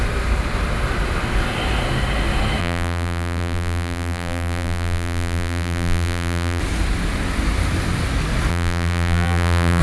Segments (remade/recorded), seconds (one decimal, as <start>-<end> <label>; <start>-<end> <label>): 0.0-2.6 recorded; 2.6-6.6 remade; 6.6-8.5 recorded; 8.5-9.8 remade